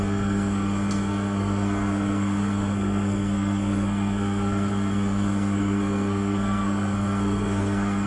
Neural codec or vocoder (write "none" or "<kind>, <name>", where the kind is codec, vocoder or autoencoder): codec, SNAC